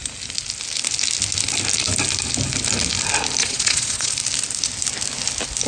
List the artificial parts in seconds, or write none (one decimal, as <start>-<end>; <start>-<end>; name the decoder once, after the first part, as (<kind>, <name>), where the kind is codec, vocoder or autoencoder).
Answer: 3.4-4.1 (vocoder, Vocos)